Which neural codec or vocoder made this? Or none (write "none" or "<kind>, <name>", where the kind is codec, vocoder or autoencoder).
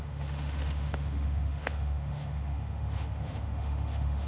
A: autoencoder, DAC-VAE